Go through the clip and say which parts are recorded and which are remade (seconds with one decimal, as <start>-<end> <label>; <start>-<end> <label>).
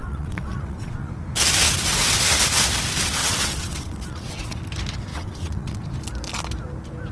0.0-1.1 remade; 1.1-3.2 recorded; 3.2-4.6 remade; 4.6-5.1 recorded; 5.1-5.8 remade; 5.8-7.1 recorded